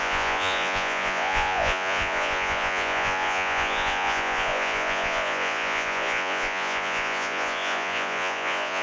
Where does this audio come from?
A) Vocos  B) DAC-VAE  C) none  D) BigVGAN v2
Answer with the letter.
A